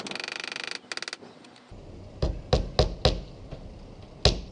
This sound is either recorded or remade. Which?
recorded